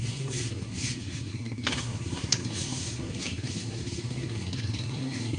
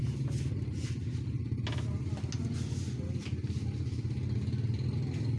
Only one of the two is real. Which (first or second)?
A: second